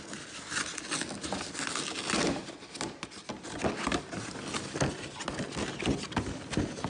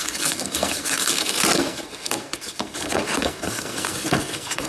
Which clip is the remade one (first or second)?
second